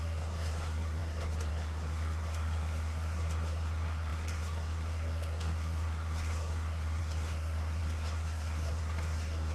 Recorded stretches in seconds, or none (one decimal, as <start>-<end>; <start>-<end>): none